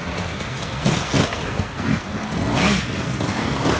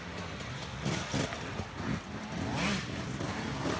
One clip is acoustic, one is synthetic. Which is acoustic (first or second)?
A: second